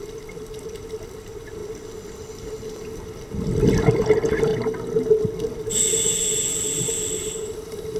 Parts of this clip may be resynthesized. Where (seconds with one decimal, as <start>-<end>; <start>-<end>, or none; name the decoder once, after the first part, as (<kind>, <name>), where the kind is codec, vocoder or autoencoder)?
0.0-1.6 (vocoder, BigVGAN v2); 3.8-4.5; 7.1-8.0